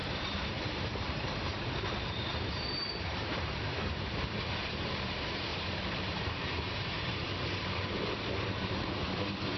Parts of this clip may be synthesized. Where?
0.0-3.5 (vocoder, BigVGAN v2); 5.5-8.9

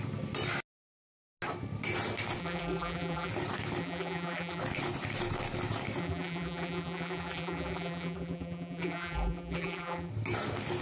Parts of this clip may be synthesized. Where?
2.4-3.3 (vocoder, BigVGAN v2); 3.8-4.6; 6.0-10.1

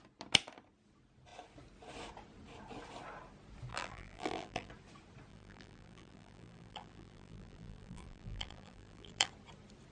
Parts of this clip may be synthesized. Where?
3.7-4.7 (vocoder, BigVGAN v2); 5.3-9.3

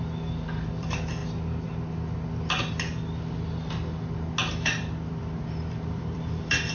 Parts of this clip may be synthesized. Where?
0.0-1.2 (vocoder, BigVGAN v2); 5.2-6.7

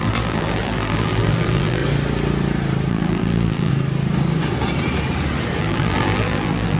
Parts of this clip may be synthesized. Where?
0.0-1.8 (vocoder, BigVGAN v2); 2.9-3.7; 5.6-6.8

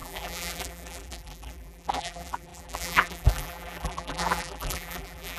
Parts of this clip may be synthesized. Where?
0.0-5.4 (vocoder, BigVGAN v2)

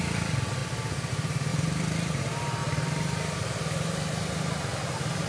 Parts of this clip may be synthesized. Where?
1.5-2.2 (vocoder, BigVGAN v2); 2.6-5.3